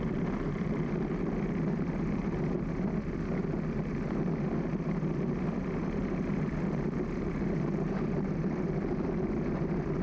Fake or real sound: real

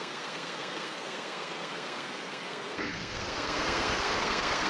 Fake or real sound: fake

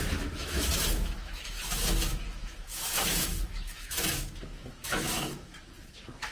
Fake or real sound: fake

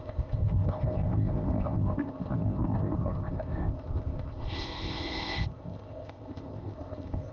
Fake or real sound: fake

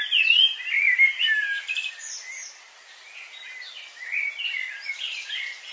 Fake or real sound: real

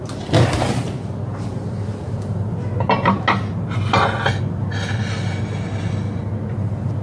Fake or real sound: real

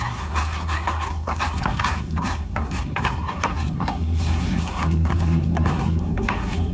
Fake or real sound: fake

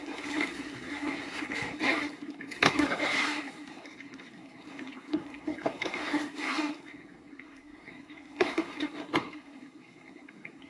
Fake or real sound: fake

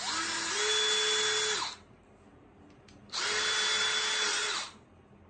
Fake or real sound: real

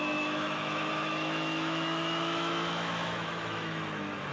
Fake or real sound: fake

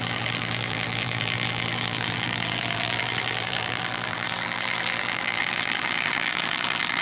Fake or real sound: fake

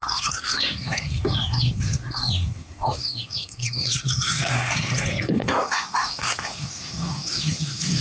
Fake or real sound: fake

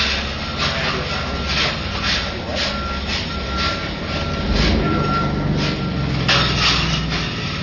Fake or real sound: real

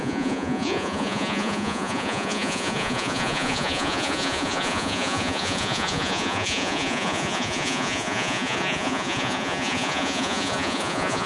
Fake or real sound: fake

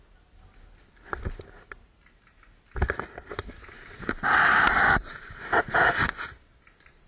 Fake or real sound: real